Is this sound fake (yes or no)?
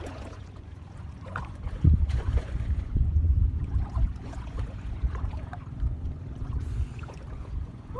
yes